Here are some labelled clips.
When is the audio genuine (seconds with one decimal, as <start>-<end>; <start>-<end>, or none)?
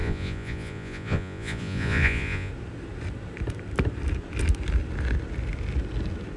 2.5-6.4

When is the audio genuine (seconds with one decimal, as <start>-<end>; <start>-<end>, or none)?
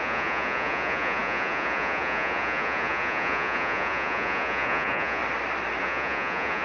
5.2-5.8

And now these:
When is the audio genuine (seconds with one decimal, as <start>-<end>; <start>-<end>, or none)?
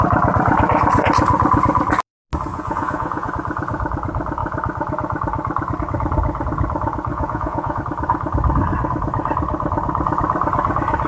0.0-2.5; 3.3-7.1; 7.8-11.1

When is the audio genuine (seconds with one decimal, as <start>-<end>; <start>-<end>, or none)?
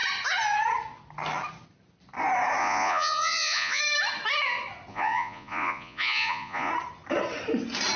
0.0-2.6; 3.8-4.9; 6.7-8.0